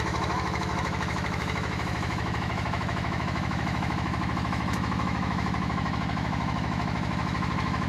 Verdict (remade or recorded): remade